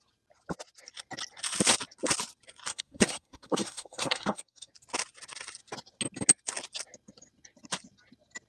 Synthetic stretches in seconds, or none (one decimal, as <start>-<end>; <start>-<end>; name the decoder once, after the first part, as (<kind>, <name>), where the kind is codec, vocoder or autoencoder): 2.7-4.7 (codec, SNAC)